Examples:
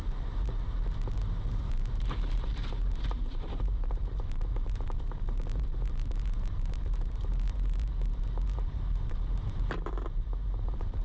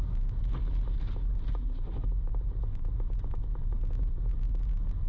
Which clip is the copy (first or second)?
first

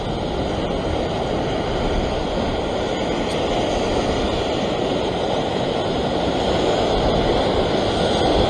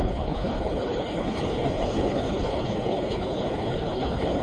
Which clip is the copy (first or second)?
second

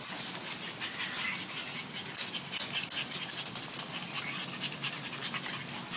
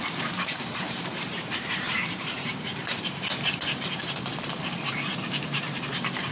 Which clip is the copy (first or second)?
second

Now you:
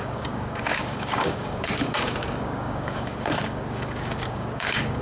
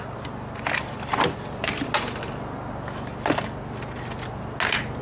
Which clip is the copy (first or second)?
first